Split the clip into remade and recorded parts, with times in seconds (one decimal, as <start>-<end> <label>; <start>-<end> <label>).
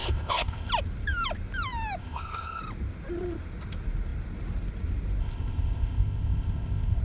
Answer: 0.0-0.7 remade; 0.7-2.0 recorded; 2.0-2.6 remade; 2.6-5.2 recorded; 5.2-7.0 remade